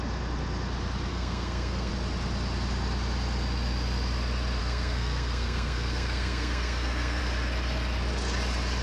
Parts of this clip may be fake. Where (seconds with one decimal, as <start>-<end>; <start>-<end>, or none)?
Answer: 1.1-1.9; 4.6-7.2